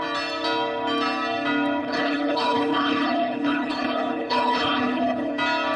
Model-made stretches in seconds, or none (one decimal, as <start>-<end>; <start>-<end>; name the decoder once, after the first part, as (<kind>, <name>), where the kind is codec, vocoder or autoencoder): 1.8-5.3 (codec, HILCodec)